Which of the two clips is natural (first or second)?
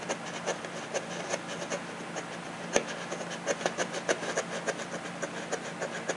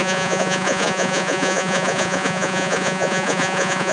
first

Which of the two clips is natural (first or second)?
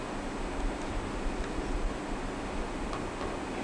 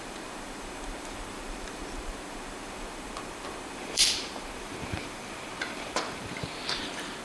first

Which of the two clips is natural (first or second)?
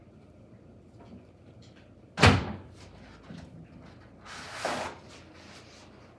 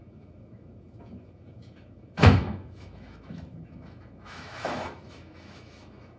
first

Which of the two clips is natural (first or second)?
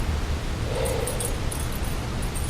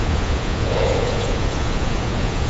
first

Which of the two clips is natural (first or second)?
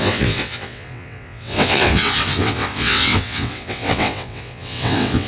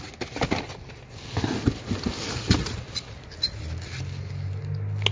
second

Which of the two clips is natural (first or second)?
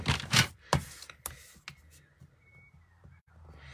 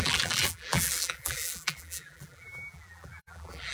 first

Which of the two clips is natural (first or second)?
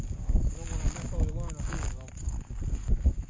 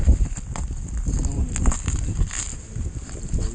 first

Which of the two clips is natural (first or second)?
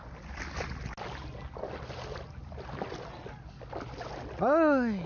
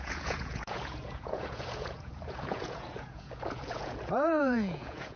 first